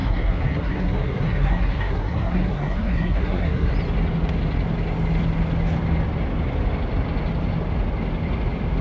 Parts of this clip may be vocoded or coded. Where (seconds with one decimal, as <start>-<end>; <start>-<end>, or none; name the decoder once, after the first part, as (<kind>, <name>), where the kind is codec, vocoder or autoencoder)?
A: 0.0-3.7 (codec, SNAC)